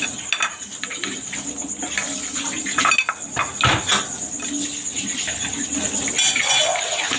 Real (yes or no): yes